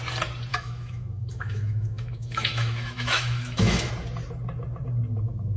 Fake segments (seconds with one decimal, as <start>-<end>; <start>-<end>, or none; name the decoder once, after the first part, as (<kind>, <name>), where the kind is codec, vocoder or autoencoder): 0.5-3.9 (autoencoder, DAC-VAE)